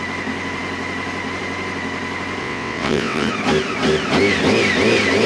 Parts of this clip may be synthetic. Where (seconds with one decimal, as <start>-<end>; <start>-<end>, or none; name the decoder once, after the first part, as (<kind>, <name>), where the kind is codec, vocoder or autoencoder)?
2.4-3.3 (vocoder, WaveNeXt)